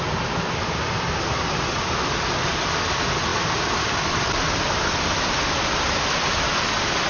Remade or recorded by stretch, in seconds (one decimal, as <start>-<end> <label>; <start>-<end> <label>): 0.0-7.1 recorded